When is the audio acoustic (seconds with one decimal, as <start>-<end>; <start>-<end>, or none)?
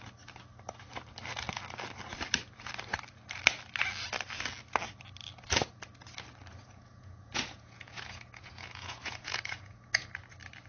0.0-6.5; 10.1-10.7